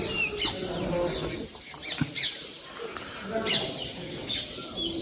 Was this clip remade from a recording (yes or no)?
no